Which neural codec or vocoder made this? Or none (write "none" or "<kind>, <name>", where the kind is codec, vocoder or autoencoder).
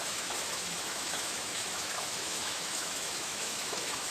autoencoder, DAC-VAE